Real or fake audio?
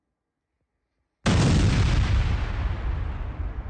real